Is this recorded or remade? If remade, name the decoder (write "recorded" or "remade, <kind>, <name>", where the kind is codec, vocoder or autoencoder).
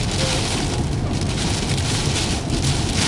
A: recorded